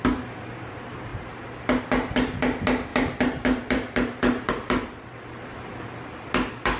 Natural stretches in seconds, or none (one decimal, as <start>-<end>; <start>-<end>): 0.0-2.9; 4.5-6.8